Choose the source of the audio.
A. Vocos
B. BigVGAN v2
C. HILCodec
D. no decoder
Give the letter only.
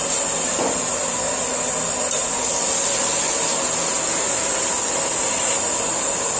D